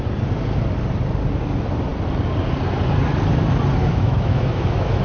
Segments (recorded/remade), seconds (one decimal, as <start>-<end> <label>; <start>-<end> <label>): 0.0-3.8 recorded; 3.8-5.0 remade